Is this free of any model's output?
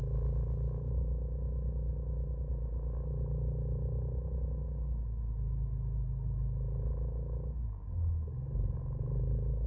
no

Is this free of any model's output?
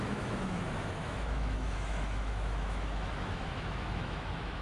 no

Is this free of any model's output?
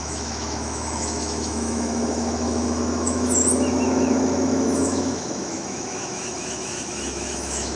no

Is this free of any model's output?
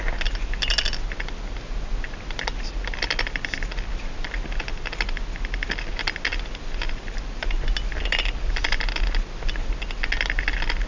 yes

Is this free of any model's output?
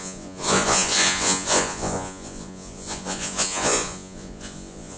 no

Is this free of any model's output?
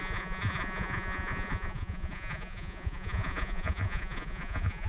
no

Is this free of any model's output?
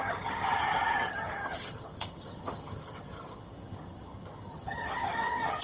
no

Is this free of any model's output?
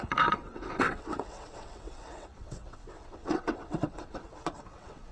no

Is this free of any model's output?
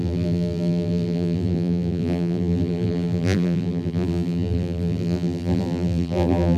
no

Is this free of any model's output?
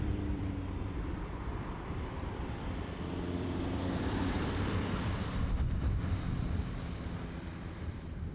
no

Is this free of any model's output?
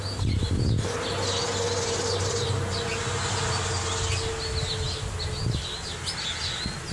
yes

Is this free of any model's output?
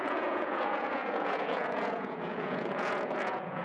no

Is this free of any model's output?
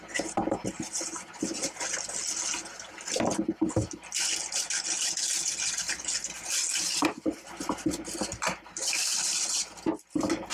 yes